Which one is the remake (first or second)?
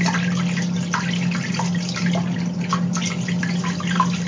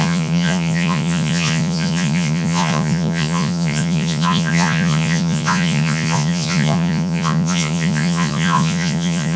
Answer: second